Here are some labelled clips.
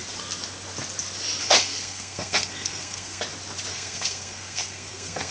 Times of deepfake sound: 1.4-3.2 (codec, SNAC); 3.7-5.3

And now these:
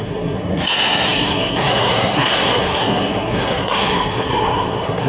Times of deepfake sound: 0.0-5.1 (codec, SNAC)

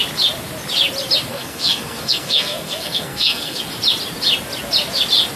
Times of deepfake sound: 1.3-3.6 (codec, SNAC)

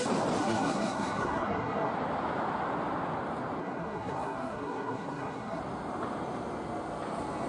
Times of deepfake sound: 0.4-1.9 (codec, SNAC); 3.6-5.6

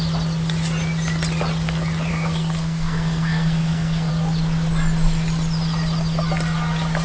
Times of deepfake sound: 2.1-4.1 (codec, SNAC)

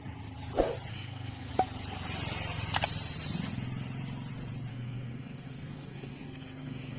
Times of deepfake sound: 0.9-1.5 (codec, SNAC); 4.7-7.0